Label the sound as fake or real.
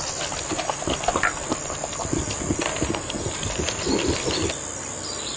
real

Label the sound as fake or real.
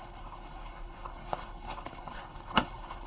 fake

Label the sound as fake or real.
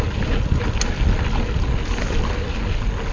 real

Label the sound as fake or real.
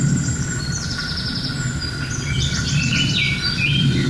real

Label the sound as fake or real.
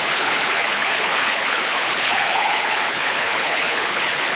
fake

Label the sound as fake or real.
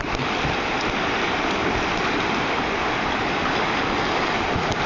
real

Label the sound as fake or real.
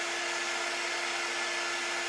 real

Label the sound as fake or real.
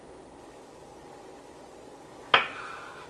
real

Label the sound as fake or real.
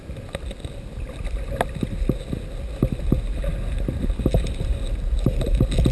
real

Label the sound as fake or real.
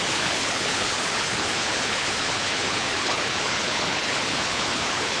fake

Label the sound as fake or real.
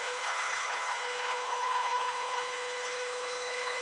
fake